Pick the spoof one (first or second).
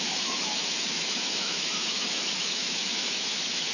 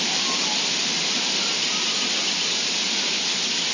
first